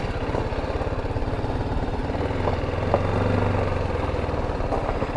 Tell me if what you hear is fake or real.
real